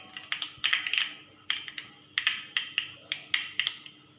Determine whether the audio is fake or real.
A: real